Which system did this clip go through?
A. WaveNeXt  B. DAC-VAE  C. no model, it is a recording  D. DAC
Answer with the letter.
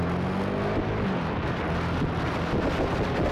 C